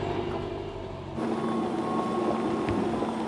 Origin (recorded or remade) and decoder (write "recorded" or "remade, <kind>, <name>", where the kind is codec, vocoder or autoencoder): recorded